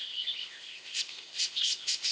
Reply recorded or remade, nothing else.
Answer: remade